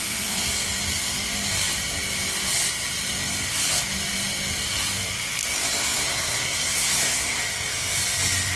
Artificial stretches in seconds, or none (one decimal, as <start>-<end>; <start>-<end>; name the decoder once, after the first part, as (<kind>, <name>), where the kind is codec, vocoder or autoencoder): 6.0-7.4 (codec, SNAC)